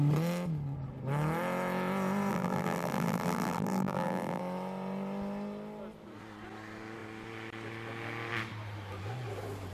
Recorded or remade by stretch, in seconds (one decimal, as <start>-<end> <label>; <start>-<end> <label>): 0.0-2.3 recorded; 2.3-4.4 remade; 4.4-9.7 recorded

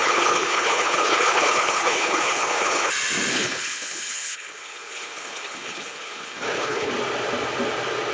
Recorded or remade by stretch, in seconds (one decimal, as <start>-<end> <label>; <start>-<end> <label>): 0.0-2.9 remade; 2.9-3.3 recorded; 3.3-6.9 remade; 6.9-8.1 recorded

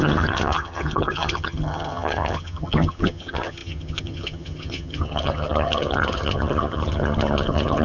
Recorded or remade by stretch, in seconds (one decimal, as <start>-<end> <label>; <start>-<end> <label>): 0.0-7.8 remade

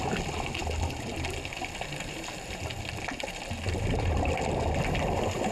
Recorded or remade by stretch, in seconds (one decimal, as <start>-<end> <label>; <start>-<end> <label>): 0.0-5.5 recorded

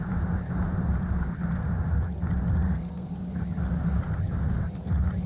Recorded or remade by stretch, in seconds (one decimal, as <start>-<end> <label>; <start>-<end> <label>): 0.0-2.6 recorded; 2.6-3.1 remade; 3.1-5.3 recorded

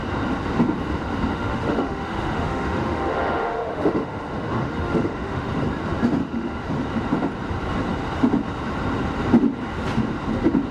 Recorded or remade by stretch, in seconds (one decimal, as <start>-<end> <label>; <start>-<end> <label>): 0.0-1.3 recorded; 1.3-5.6 remade; 5.6-6.2 recorded; 6.2-6.7 remade; 6.7-10.7 recorded

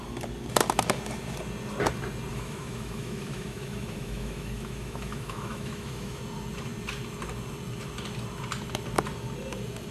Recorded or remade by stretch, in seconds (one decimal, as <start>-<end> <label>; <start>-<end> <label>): 0.0-2.3 recorded; 2.3-6.2 remade; 6.2-9.9 recorded